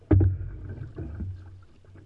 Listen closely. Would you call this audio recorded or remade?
recorded